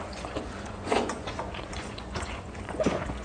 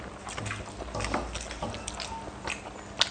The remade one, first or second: first